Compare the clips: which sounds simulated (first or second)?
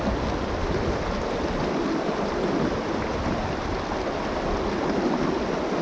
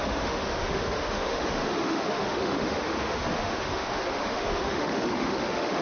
second